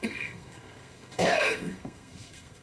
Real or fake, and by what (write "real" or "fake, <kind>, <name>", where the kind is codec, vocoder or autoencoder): fake, codec, SNAC